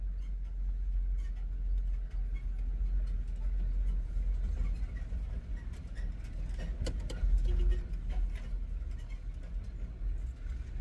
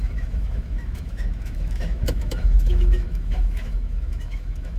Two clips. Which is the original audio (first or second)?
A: first